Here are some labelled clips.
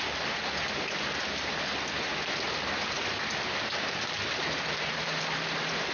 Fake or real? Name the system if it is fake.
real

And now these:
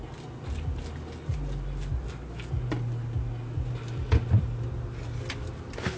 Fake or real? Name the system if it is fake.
real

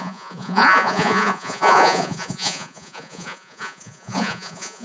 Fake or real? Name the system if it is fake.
fake, vocoder, Vocos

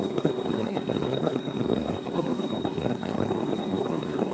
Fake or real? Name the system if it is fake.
fake, codec, SNAC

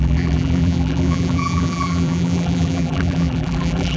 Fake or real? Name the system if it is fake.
fake, vocoder, BigVGAN v2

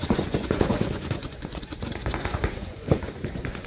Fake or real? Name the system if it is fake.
fake, vocoder, Vocos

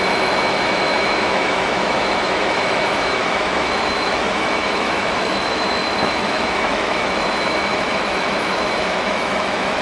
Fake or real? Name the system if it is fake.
fake, autoencoder, DAC-VAE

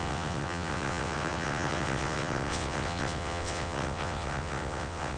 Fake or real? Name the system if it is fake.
fake, vocoder, WaveNeXt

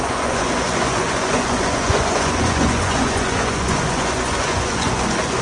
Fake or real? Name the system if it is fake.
fake, vocoder, Vocos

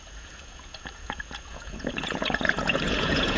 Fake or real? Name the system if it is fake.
fake, vocoder, Vocos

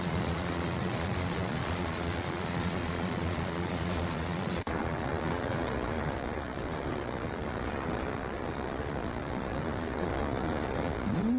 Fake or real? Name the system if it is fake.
fake, vocoder, Vocos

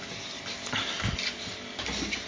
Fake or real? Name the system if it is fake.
real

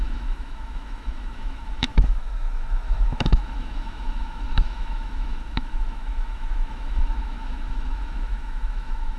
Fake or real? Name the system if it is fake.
fake, autoencoder, DAC-VAE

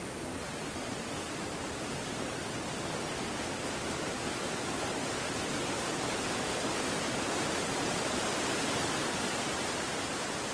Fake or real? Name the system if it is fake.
real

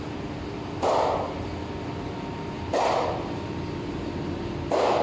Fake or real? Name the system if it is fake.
real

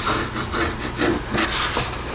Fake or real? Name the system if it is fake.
real